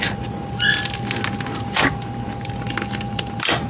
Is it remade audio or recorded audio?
recorded